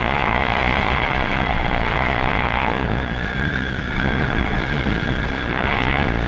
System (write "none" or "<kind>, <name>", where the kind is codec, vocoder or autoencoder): vocoder, Vocos